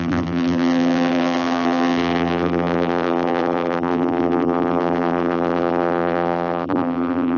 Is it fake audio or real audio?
fake